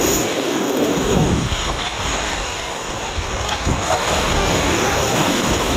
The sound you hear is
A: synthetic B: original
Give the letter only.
A